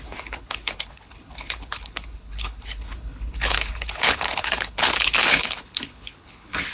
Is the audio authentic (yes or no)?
no